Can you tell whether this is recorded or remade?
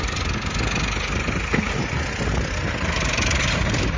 recorded